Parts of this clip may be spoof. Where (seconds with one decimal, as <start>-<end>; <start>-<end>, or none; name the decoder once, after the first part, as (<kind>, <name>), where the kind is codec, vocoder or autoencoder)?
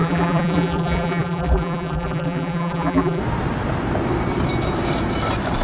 0.0-3.2 (vocoder, BigVGAN v2)